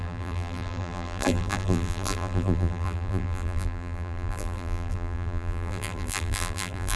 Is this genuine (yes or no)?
no